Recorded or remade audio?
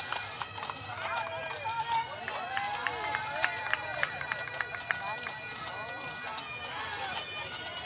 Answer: recorded